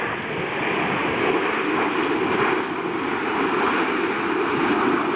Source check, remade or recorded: recorded